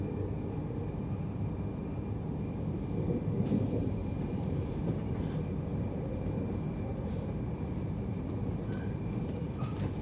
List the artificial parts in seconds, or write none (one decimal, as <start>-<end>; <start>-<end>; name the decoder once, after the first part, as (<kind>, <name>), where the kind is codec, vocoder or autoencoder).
4.0-6.4 (vocoder, BigVGAN v2); 6.9-9.6